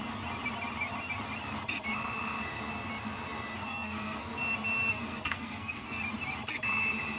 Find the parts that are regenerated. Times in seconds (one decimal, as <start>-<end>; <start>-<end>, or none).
3.6-4.3; 4.9-6.0